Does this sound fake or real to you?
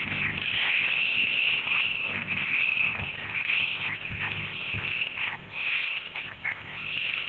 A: fake